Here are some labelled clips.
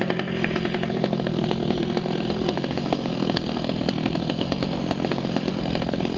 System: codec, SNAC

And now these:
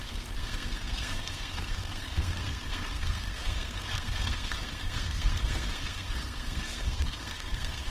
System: codec, SNAC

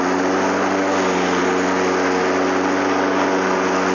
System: none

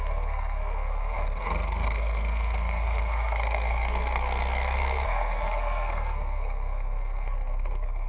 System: codec, SNAC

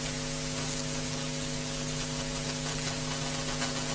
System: none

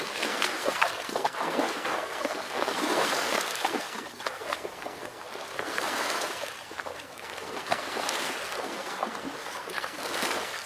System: codec, SNAC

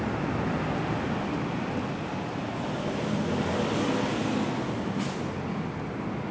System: none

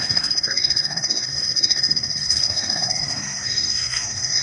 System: codec, SNAC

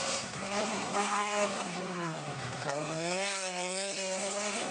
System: codec, SNAC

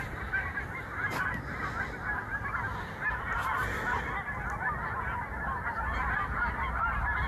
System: none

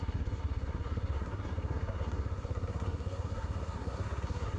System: codec, SNAC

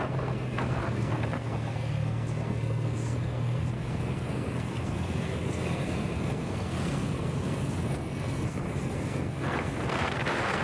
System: codec, SNAC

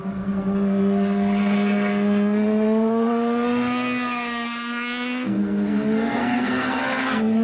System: codec, SNAC